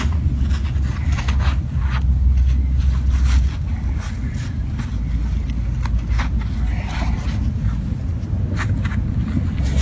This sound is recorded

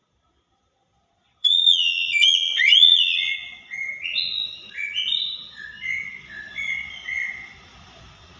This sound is remade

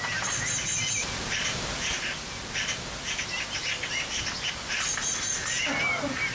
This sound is recorded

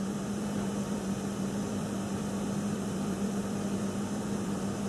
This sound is remade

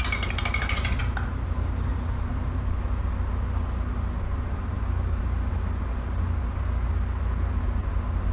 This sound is recorded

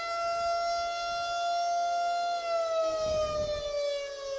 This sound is recorded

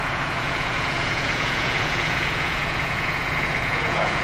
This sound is remade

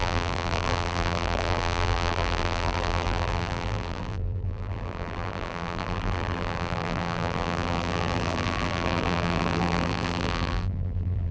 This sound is remade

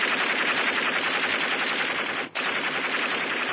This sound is recorded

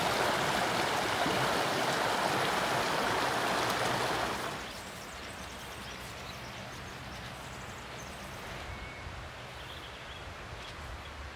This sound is recorded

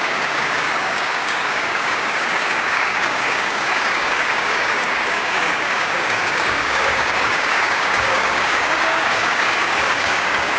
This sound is remade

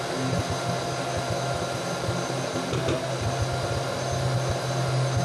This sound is recorded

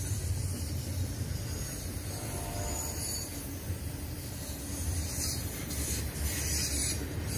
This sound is recorded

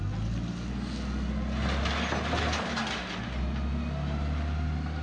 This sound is recorded